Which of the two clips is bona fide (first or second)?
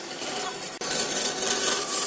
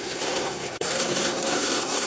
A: first